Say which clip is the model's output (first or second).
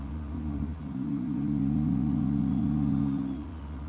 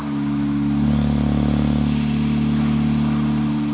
first